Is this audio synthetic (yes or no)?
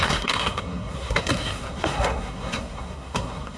yes